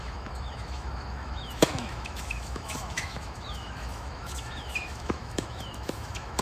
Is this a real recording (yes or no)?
no